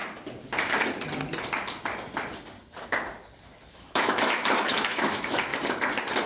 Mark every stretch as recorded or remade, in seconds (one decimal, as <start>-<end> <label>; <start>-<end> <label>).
0.0-3.7 recorded; 3.7-5.5 remade; 5.5-6.3 recorded